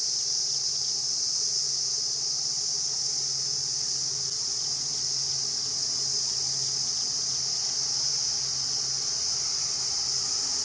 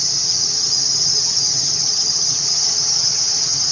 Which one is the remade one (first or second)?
second